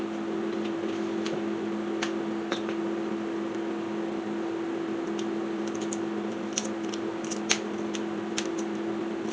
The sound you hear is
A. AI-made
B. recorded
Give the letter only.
B